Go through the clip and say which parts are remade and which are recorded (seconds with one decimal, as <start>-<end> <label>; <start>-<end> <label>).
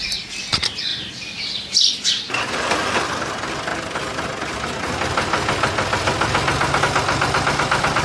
0.0-3.7 remade; 3.7-6.8 recorded; 6.8-8.0 remade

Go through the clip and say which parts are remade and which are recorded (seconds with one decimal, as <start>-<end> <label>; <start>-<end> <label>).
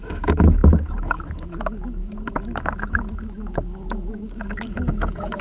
0.0-5.4 remade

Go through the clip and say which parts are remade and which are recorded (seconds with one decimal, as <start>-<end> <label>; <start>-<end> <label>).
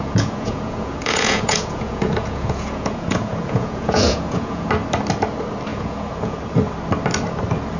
0.0-4.7 remade; 4.7-5.7 recorded; 5.7-6.4 remade; 6.4-7.8 recorded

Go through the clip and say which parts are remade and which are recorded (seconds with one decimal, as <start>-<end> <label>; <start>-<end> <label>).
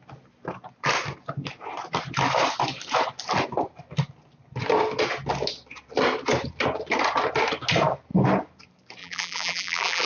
0.0-9.0 recorded; 9.0-10.1 remade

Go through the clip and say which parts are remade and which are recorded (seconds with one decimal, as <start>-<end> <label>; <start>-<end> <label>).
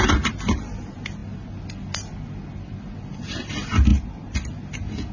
0.0-5.1 recorded